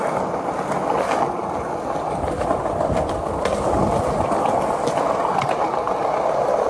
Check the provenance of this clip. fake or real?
real